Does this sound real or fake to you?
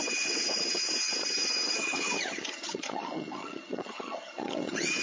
fake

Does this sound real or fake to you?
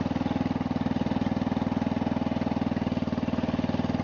real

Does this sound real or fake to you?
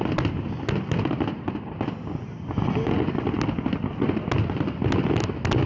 real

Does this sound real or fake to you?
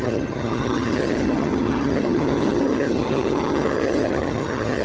fake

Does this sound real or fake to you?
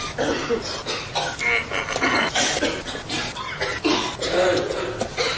real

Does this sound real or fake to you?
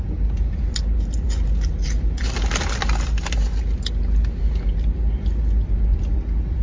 real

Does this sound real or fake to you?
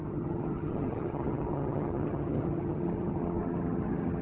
fake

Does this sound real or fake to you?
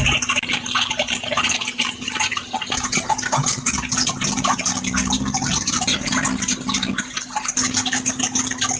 real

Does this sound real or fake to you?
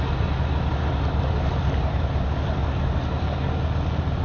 real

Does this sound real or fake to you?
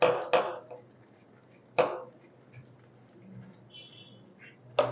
real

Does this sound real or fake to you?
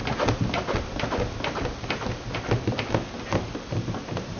real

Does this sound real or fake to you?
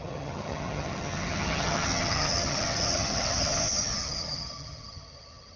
fake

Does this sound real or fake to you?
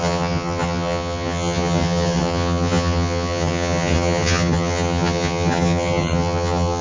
fake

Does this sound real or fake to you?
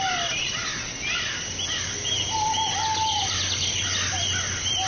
real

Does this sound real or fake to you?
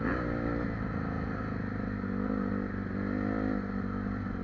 real